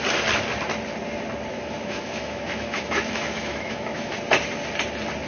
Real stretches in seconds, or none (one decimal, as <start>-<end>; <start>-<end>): 0.0-1.5; 4.1-5.3